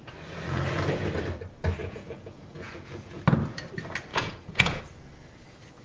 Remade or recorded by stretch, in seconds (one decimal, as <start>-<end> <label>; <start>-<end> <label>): 0.0-1.8 recorded; 1.8-3.2 remade; 3.2-4.1 recorded; 4.1-4.8 remade; 4.8-5.8 recorded